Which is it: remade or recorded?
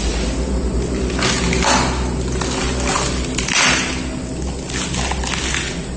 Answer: recorded